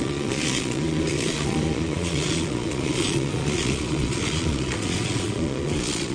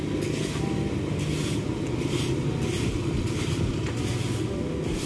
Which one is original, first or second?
second